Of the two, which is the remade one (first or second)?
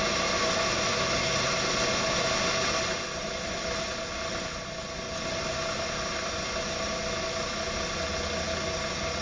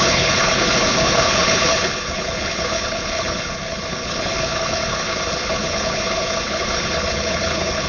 second